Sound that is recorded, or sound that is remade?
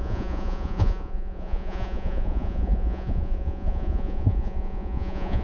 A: remade